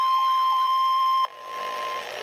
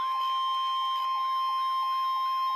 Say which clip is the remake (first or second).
first